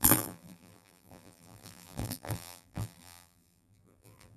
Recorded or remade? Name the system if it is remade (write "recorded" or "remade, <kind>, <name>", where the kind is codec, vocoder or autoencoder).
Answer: remade, vocoder, BigVGAN v2